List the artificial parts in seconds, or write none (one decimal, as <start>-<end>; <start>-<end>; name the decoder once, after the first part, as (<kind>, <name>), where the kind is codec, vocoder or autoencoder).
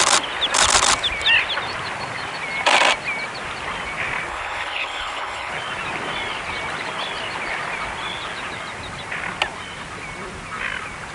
4.3-5.5 (codec, HILCodec)